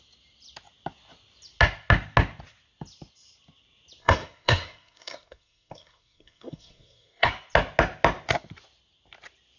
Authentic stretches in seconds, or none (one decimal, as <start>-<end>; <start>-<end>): 0.0-4.0; 7.3-9.6